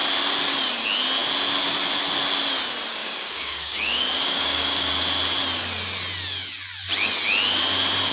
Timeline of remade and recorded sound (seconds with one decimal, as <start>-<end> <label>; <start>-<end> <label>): 0.0-3.0 recorded; 3.0-4.9 remade; 4.9-8.1 recorded